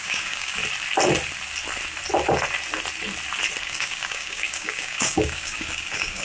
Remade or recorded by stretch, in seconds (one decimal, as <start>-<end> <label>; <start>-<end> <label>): 0.0-0.6 remade; 0.6-3.6 recorded; 3.6-6.2 remade